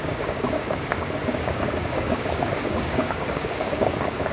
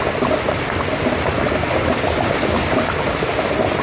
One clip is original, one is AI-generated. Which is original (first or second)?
second